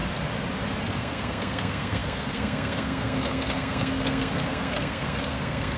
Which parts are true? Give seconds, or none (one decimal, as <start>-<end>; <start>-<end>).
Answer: 0.0-0.8